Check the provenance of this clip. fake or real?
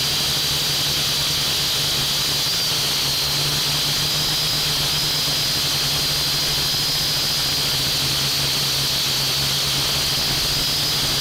real